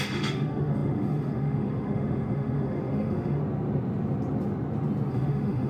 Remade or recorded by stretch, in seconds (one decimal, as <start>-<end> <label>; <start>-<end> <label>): 0.0-3.4 remade; 3.4-5.1 recorded; 5.1-5.7 remade

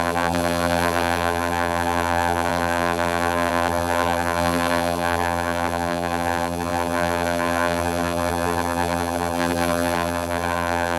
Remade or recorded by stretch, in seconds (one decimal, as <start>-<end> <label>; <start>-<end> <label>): 0.0-11.0 remade

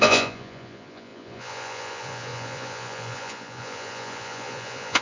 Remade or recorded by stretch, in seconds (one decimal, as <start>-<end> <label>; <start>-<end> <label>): 0.0-5.0 remade